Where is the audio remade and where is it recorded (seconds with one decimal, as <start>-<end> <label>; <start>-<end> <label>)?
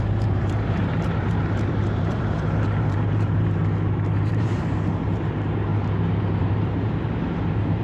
0.0-3.6 remade; 3.6-4.3 recorded; 4.3-5.7 remade; 5.7-6.4 recorded; 6.4-7.8 remade